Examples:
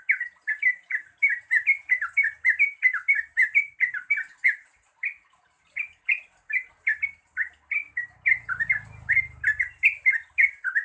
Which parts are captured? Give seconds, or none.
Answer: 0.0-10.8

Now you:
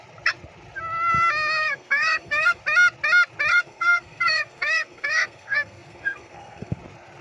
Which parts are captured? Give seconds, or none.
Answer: 0.0-1.6; 2.6-3.5; 6.8-7.2

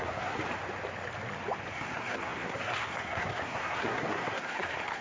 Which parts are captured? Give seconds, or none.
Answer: 0.4-1.7